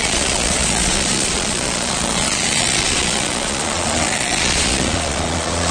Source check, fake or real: fake